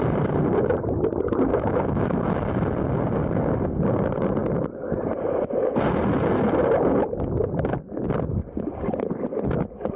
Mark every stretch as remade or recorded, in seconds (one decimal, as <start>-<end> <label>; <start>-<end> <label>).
0.0-1.5 recorded; 1.5-2.5 remade; 2.5-10.0 recorded